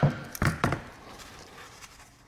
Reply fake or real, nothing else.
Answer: fake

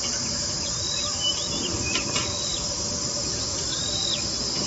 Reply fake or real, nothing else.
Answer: real